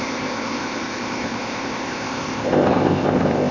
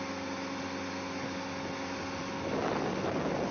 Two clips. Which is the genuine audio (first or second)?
second